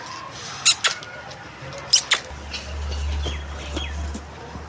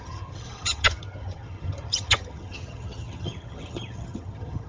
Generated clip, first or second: second